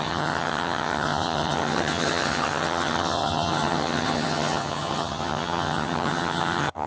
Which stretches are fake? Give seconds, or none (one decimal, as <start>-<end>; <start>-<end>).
0.0-6.9